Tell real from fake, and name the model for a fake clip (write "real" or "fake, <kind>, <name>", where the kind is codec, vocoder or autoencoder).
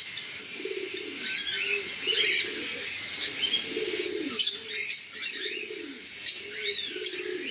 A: real